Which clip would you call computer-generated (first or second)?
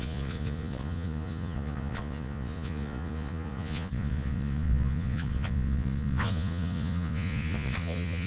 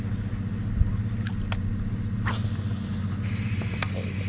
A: first